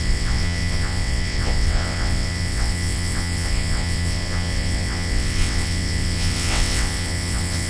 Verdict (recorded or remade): remade